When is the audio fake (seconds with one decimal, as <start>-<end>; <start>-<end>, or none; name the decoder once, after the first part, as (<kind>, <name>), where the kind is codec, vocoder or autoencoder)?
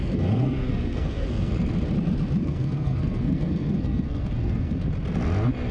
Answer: 0.0-1.5 (codec, SNAC); 2.4-4.8